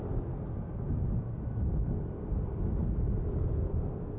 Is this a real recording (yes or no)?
yes